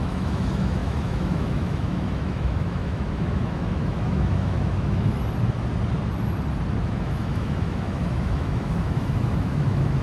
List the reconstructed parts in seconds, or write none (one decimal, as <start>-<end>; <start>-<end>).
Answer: 0.0-5.2; 6.8-10.0